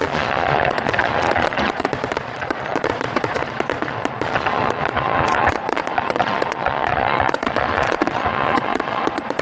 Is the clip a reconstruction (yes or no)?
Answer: yes